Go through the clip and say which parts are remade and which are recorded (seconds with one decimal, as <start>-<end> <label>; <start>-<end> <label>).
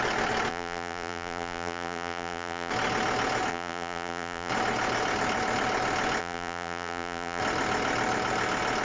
0.0-0.5 recorded; 0.5-2.7 remade; 2.7-3.5 recorded; 3.5-4.5 remade; 4.5-6.2 recorded; 6.2-7.4 remade; 7.4-8.8 recorded